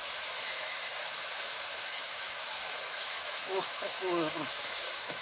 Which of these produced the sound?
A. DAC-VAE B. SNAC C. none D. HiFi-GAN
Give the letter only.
A